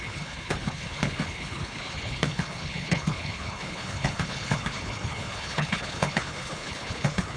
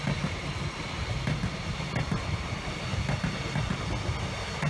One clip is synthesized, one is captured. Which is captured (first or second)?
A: second